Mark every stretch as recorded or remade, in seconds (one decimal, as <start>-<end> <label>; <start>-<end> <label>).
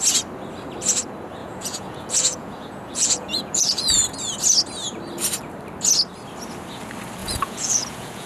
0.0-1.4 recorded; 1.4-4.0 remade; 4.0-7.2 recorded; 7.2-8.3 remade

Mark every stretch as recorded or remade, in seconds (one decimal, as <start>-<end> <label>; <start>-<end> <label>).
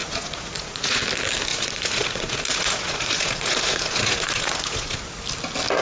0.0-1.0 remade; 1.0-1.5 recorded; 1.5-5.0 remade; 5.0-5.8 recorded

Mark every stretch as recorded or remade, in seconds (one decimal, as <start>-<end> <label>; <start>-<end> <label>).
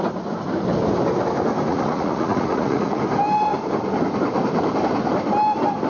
0.0-1.7 recorded; 1.7-3.0 remade; 3.0-5.9 recorded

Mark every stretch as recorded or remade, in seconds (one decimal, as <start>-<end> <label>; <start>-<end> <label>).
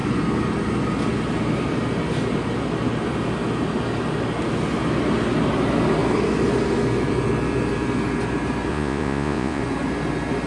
0.0-8.7 recorded; 8.7-9.6 remade; 9.6-10.5 recorded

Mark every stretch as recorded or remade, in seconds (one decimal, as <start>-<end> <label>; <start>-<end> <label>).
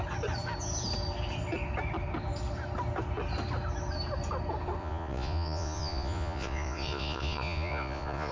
0.0-4.8 recorded; 4.8-8.3 remade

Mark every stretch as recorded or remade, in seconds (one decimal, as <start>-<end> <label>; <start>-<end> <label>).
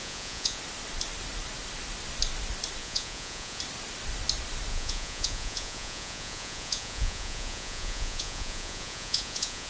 0.0-0.6 remade; 0.6-2.8 recorded; 2.8-3.6 remade; 3.6-4.7 recorded; 4.7-9.7 remade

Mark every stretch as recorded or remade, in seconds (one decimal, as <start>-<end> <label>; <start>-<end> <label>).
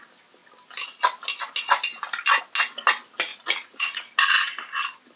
0.0-3.3 recorded; 3.3-4.1 remade; 4.1-5.2 recorded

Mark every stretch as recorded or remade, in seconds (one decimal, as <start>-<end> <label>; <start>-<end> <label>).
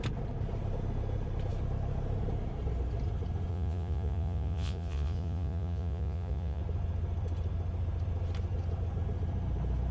0.0-3.5 recorded; 3.5-6.6 remade; 6.6-9.9 recorded